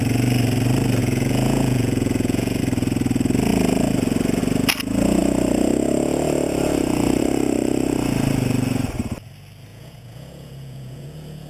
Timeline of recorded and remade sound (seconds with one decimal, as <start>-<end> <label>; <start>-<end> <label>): 0.0-1.0 recorded; 1.0-2.6 remade; 2.6-9.7 recorded; 9.7-11.5 remade